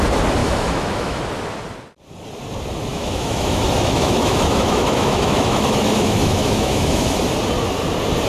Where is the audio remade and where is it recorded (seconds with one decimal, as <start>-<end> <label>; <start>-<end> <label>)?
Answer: 0.0-0.4 recorded; 0.4-1.2 remade; 1.2-2.9 recorded; 2.9-7.2 remade; 7.2-8.3 recorded